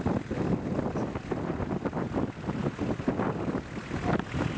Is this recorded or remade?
recorded